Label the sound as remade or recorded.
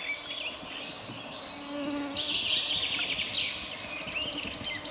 recorded